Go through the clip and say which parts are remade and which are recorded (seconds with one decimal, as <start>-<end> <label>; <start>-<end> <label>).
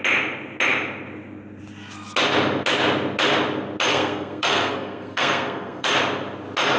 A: 0.0-3.9 recorded; 3.9-5.9 remade; 5.9-6.8 recorded